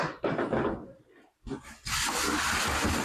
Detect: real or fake real